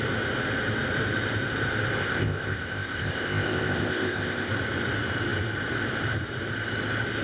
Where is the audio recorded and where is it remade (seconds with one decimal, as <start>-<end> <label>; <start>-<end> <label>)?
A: 0.0-2.0 recorded; 2.0-4.5 remade; 4.5-7.2 recorded